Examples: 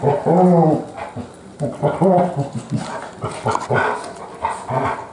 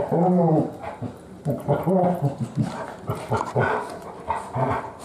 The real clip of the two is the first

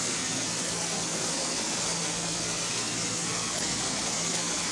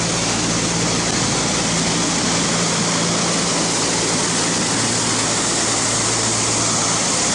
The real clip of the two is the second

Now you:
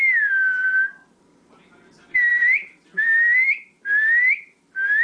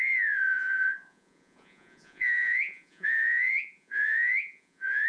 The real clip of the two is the first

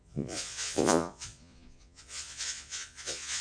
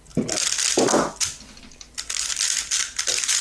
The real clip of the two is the second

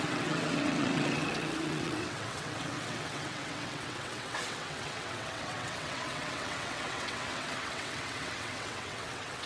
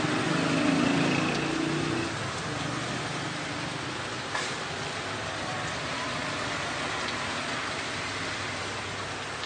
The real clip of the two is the second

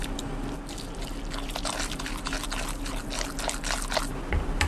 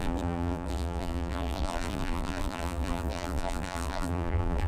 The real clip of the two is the first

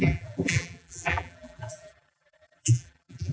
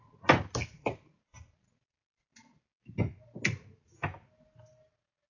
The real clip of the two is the second